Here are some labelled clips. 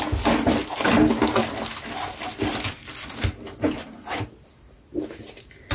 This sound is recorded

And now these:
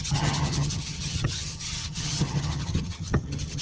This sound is remade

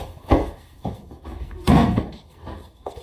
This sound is remade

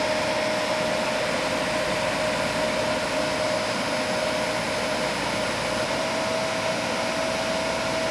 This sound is recorded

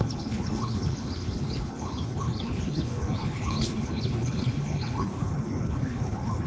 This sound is remade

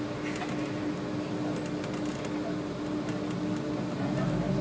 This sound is recorded